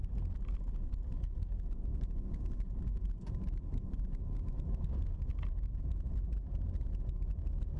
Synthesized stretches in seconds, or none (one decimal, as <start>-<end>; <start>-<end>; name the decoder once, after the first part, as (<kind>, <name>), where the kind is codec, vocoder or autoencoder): 1.9-4.5 (vocoder, BigVGAN v2)